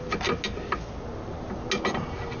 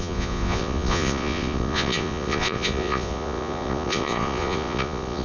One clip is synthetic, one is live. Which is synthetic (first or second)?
second